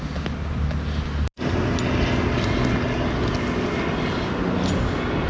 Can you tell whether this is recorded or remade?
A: recorded